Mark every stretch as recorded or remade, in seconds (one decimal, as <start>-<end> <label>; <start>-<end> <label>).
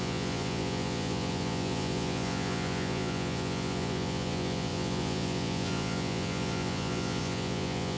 0.0-8.0 remade